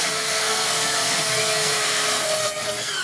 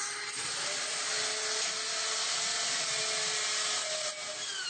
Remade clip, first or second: first